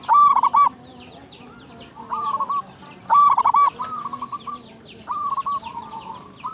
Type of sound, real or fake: real